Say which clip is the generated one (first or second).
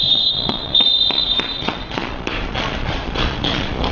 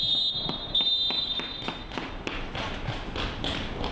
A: first